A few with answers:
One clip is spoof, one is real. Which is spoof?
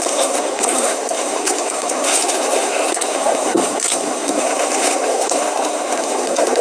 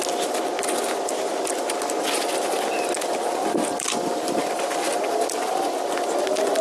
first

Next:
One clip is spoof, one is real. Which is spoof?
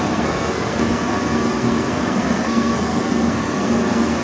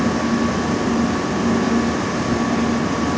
first